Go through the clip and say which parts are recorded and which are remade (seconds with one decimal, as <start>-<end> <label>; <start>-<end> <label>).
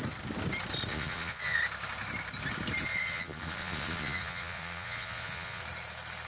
0.0-0.9 recorded; 0.9-1.6 remade; 1.6-2.9 recorded; 2.9-5.6 remade; 5.6-6.3 recorded